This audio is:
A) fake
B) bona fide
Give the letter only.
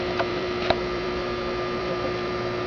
A